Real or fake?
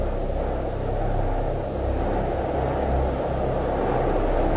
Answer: real